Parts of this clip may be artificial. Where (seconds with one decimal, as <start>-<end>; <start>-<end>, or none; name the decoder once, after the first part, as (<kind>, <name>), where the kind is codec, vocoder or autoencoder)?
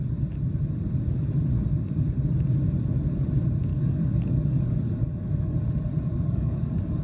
3.7-5.6 (codec, DAC); 6.1-7.0